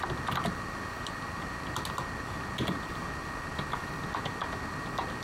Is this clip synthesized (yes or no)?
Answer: no